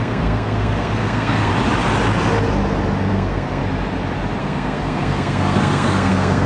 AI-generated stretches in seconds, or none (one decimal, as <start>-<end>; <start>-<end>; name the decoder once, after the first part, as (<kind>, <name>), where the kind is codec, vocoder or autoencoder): 0.0-1.5 (codec, SNAC); 3.1-3.6; 4.4-6.5